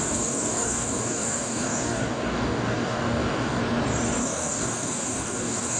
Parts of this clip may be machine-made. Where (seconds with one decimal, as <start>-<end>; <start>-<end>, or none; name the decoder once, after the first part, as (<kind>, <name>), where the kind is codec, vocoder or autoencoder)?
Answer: 0.0-3.6 (codec, DAC); 4.2-5.8